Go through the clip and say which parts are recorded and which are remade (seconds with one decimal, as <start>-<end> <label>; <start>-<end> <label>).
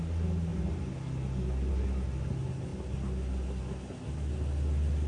0.0-5.1 recorded